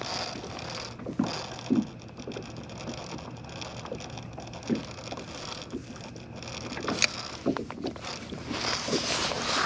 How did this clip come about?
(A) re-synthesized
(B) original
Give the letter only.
B